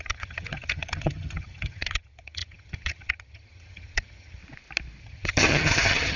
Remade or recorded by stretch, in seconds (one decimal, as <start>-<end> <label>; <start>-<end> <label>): 0.0-4.4 remade; 4.4-5.0 recorded; 5.0-6.2 remade